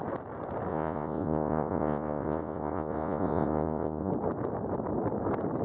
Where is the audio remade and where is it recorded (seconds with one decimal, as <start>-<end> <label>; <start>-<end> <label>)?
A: 0.0-0.7 recorded; 0.7-4.1 remade; 4.1-5.6 recorded